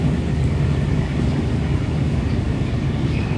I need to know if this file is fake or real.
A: fake